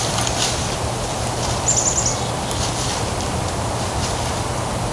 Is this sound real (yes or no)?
yes